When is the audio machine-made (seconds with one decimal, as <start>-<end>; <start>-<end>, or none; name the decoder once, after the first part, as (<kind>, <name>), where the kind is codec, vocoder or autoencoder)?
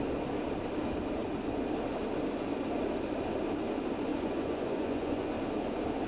4.1-5.3 (vocoder, Vocos)